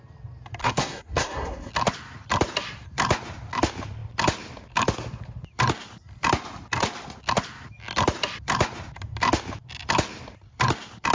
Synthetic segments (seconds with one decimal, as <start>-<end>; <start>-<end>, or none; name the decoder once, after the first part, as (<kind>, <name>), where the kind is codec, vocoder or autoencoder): 0.6-1.7 (codec, SNAC)